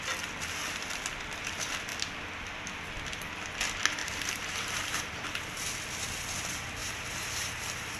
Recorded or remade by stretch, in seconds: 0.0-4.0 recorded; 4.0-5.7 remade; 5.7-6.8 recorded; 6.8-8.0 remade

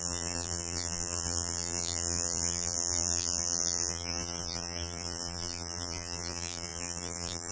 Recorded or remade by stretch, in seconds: 0.0-7.5 remade

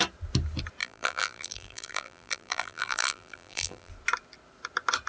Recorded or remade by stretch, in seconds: 0.0-0.8 recorded; 0.8-3.9 remade; 3.9-5.1 recorded